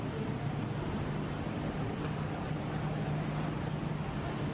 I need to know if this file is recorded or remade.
recorded